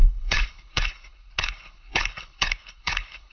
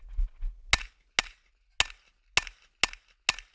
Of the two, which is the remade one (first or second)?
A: first